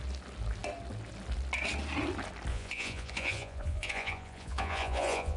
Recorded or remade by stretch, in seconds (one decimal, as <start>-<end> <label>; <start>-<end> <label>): 0.0-2.5 recorded; 2.5-5.4 remade